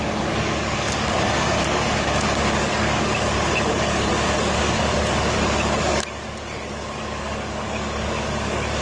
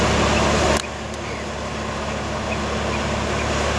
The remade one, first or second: first